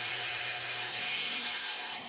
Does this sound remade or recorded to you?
remade